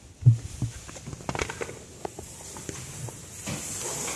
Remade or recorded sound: recorded